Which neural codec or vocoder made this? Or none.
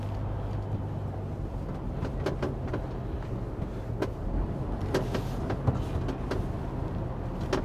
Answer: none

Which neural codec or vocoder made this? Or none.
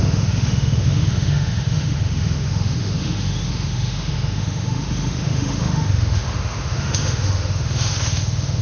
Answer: autoencoder, DAC-VAE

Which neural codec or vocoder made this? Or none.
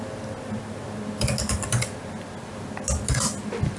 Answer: none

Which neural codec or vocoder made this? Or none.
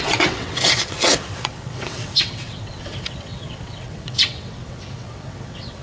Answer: vocoder, WaveNeXt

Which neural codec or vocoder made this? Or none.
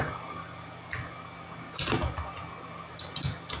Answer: none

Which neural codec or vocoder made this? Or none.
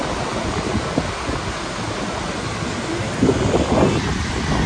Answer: none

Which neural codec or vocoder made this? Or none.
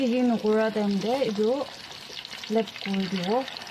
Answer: none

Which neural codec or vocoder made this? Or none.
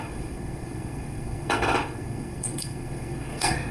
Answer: codec, SNAC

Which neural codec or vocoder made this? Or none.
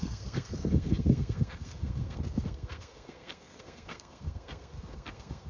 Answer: codec, SNAC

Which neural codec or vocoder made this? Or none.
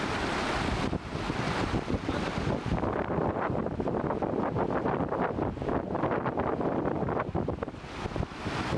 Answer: none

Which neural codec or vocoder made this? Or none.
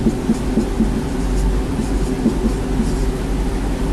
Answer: none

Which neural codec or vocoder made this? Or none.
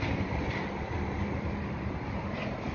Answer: none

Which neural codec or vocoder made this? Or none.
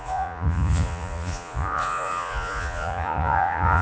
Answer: vocoder, Vocos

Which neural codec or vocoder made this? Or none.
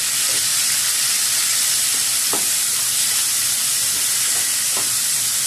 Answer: vocoder, BigVGAN v2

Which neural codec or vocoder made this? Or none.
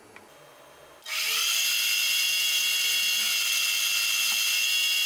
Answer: none